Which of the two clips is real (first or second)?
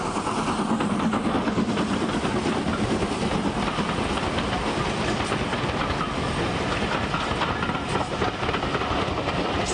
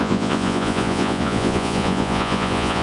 first